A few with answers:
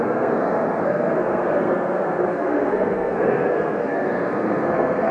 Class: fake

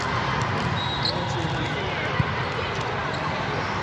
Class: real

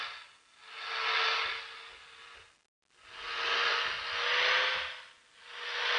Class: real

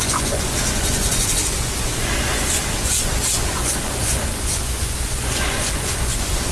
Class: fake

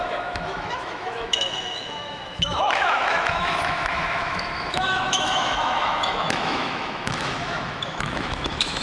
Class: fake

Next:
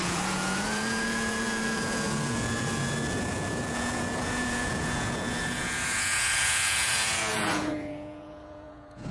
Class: fake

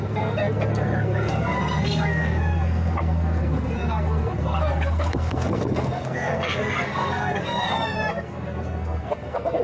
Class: fake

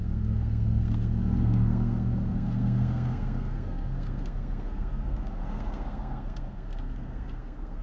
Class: fake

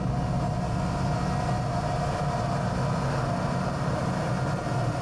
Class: real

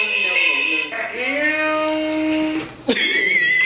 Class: real